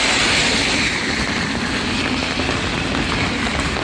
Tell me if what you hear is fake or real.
real